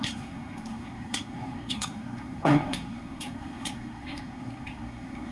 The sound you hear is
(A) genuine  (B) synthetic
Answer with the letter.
B